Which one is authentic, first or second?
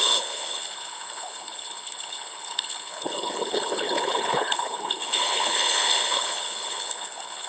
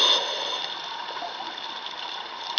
second